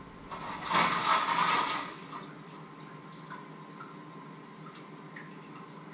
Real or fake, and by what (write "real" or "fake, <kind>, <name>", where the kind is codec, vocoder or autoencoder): real